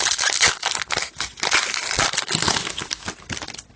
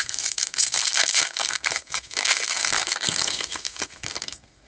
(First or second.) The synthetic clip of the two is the second